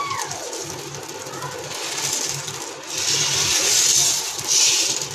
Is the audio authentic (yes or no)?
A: yes